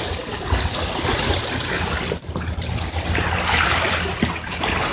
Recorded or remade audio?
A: recorded